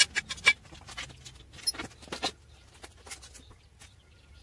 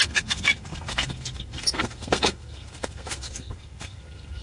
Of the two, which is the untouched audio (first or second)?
first